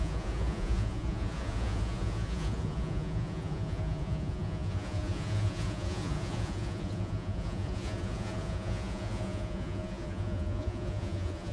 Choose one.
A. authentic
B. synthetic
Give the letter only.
B